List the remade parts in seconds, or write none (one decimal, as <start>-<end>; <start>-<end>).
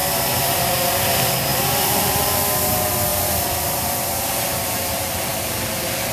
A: 0.0-0.7; 1.5-2.2; 3.1-3.9